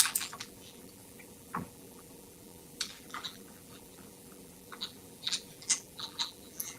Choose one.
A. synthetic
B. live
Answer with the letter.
A